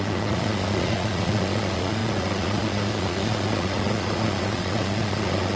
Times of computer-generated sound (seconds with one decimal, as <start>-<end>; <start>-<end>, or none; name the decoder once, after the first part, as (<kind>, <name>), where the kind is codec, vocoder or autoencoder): 0.0-5.6 (vocoder, Vocos)